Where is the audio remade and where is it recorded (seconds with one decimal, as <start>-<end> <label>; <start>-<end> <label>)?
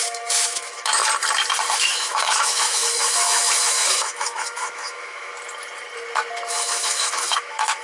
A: 0.0-1.0 remade; 1.0-1.7 recorded; 1.7-5.3 remade; 5.3-6.5 recorded; 6.5-7.8 remade